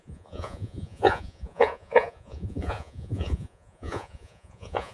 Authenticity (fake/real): fake